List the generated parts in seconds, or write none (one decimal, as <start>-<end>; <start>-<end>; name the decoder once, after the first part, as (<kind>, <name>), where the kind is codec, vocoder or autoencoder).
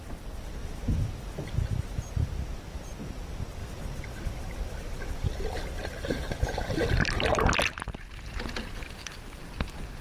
0.6-1.5 (vocoder, BigVGAN v2)